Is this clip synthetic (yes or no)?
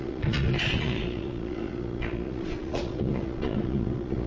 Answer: yes